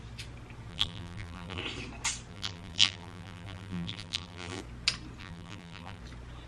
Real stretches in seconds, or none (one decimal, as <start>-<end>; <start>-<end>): 0.0-0.7; 1.6-2.3; 4.6-5.2; 6.0-6.5